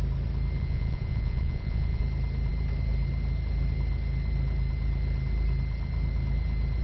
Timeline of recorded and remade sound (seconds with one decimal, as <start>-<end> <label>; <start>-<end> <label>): 0.0-0.6 recorded; 0.6-2.0 remade; 2.0-6.8 recorded

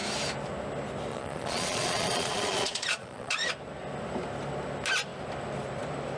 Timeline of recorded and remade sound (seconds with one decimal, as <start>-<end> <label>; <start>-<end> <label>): 0.0-1.1 recorded; 1.1-3.5 remade; 3.5-6.2 recorded